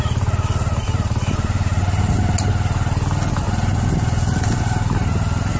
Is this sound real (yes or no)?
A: yes